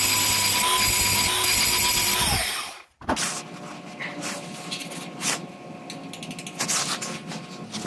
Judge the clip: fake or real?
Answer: real